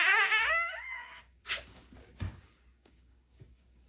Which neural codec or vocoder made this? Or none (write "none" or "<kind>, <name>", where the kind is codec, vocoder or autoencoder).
codec, DAC